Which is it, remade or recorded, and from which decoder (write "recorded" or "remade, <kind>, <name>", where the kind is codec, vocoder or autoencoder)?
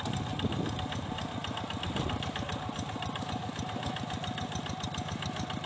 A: recorded